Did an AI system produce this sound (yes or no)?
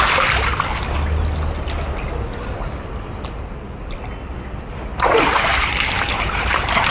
no